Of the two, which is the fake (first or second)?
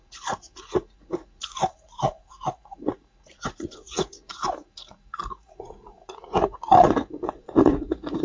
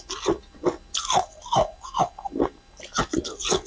first